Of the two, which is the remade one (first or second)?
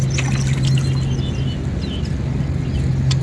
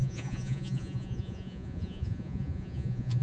second